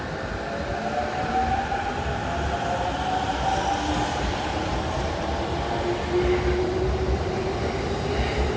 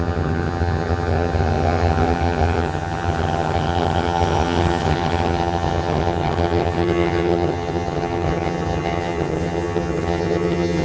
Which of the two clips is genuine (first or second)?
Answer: first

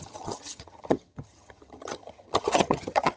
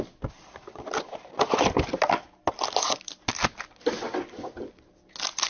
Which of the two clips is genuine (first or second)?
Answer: second